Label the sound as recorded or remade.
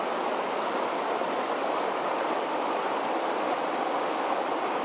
remade